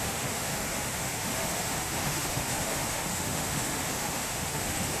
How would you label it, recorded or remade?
remade